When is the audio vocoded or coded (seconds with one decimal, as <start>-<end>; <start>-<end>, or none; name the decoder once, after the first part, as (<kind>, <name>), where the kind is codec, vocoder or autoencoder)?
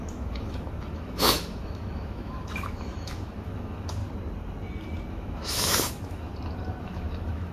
0.0-4.0 (autoencoder, DAC-VAE); 5.1-6.3; 6.8-7.5